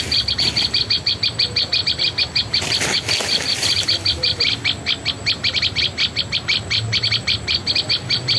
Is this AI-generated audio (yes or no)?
no